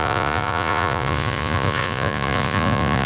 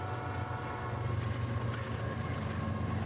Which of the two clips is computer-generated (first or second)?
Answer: first